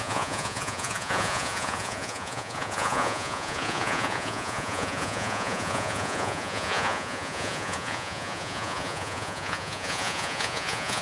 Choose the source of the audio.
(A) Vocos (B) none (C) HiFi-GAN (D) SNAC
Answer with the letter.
A